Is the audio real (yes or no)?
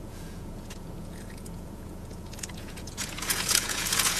no